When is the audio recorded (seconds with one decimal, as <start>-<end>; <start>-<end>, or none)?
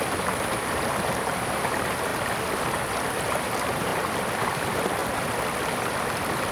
2.1-3.4; 3.9-4.4; 5.0-6.5